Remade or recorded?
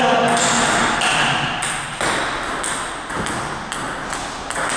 recorded